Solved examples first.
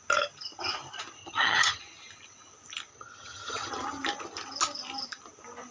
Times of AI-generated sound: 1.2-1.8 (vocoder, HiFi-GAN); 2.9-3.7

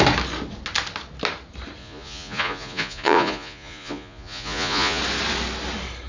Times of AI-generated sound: 1.8-5.0 (vocoder, Vocos)

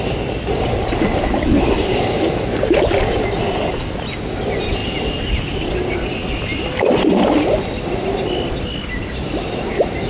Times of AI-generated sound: none

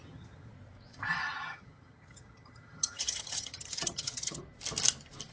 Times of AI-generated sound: 0.0-0.5 (vocoder, HiFi-GAN); 1.2-4.4

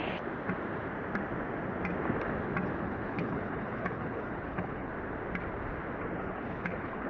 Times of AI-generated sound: 2.8-4.9 (codec, HILCodec); 6.2-7.1